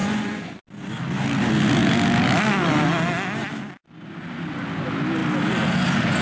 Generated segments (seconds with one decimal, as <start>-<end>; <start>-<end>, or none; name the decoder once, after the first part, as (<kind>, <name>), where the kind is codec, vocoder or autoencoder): 0.0-0.6 (vocoder, Vocos)

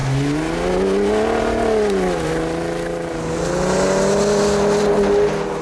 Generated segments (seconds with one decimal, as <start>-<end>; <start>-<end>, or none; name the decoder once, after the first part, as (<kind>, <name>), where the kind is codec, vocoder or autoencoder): none

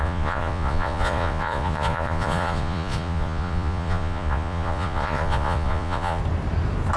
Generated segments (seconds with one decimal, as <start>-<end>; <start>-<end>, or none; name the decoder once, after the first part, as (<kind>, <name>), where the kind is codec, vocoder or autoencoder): 0.0-6.2 (vocoder, Vocos)

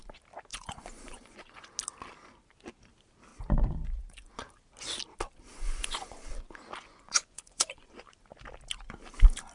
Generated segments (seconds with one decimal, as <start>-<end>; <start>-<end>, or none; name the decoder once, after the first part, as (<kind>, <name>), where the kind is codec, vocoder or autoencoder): 0.5-1.7 (vocoder, Vocos); 3.3-4.3; 5.5-6.3; 6.8-8.0

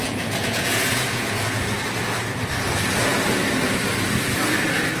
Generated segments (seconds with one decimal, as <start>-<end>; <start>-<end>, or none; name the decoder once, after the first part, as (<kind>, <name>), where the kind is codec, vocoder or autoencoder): 0.0-1.7 (vocoder, Vocos)

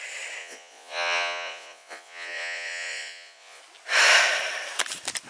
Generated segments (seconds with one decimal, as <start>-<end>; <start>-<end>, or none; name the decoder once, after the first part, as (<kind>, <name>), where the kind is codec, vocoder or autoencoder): 0.4-3.6 (vocoder, Vocos)